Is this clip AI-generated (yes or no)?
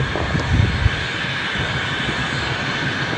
no